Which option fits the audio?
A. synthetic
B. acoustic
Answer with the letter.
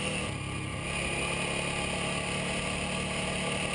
B